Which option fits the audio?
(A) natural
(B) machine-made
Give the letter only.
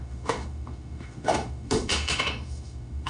B